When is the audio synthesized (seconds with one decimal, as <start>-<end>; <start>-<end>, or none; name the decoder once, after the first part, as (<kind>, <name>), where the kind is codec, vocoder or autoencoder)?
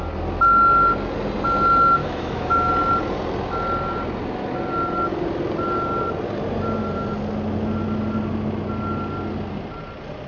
2.0-2.7 (autoencoder, DAC-VAE)